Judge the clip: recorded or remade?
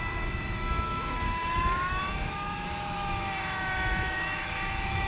remade